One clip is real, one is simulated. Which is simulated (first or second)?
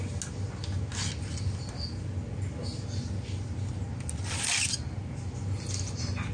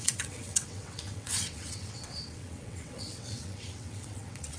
second